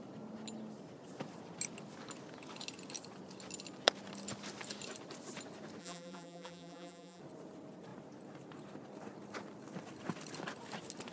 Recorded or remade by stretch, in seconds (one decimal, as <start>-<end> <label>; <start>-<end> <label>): 0.0-5.8 recorded; 5.8-7.2 remade; 7.2-11.1 recorded